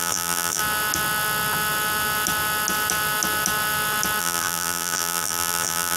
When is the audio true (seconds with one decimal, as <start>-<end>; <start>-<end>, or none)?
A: 0.6-4.2